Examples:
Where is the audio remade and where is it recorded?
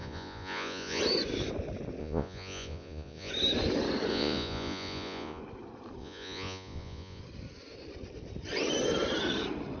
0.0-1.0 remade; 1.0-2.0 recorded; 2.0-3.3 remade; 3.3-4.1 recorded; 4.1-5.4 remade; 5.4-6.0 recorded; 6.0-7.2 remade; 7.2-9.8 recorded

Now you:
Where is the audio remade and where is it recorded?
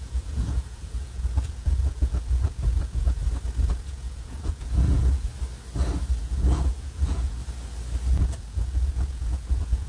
0.0-3.2 remade; 3.2-3.7 recorded; 3.7-5.3 remade; 5.3-6.2 recorded; 6.2-7.4 remade; 7.4-8.1 recorded; 8.1-9.9 remade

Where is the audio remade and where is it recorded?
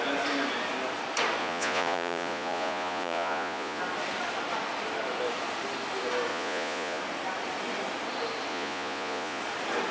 0.0-1.4 recorded; 1.4-3.8 remade; 3.8-6.3 recorded; 6.3-7.0 remade; 7.0-8.5 recorded; 8.5-9.4 remade; 9.4-9.9 recorded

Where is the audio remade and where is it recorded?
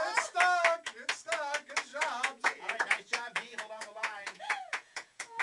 0.0-1.9 recorded; 1.9-5.4 remade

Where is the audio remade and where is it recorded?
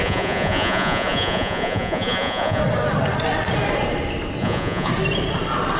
0.0-2.6 remade; 2.6-4.4 recorded; 4.4-4.9 remade; 4.9-5.8 recorded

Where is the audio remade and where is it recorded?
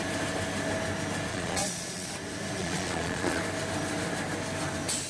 0.0-1.3 recorded; 1.3-2.1 remade; 2.1-2.6 recorded; 2.6-3.4 remade; 3.4-5.1 recorded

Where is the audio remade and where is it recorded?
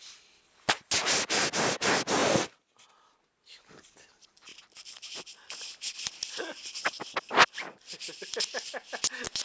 0.0-9.4 recorded